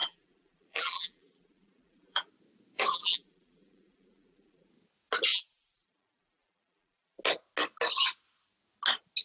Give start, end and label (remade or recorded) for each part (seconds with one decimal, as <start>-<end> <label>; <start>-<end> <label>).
0.0-2.3 remade; 2.3-2.9 recorded; 2.9-4.7 remade; 4.7-5.3 recorded; 5.3-7.2 remade; 7.2-9.2 recorded